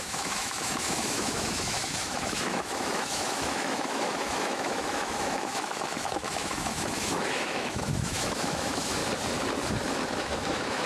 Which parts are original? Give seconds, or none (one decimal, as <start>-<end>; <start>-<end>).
9.0-10.2